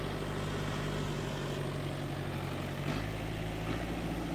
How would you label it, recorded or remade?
recorded